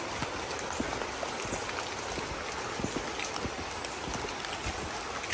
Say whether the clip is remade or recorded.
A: recorded